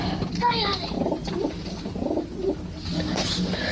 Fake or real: real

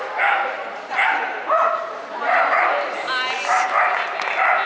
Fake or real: real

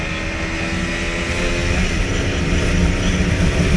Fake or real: real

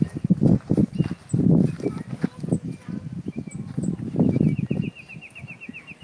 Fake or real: real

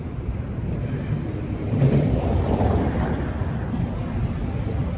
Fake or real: fake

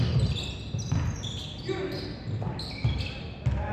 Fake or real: real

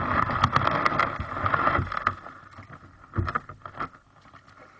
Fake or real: real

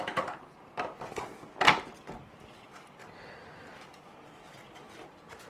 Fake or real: real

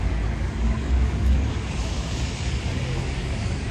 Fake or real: fake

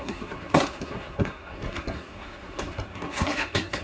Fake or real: fake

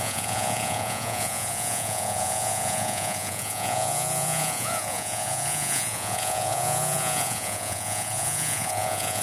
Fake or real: fake